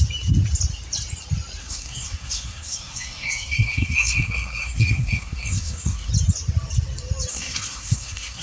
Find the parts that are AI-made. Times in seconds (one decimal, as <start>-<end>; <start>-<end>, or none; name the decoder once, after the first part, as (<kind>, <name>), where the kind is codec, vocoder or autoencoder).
1.6-6.1 (codec, SNAC); 7.3-8.4